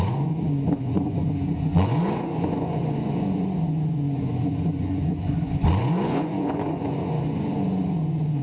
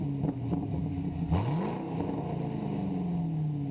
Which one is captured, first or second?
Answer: second